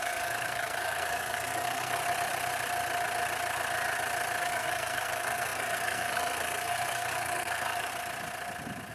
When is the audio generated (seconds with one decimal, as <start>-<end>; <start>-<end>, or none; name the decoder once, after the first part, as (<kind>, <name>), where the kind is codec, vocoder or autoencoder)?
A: 0.0-2.0 (codec, SNAC); 4.4-7.9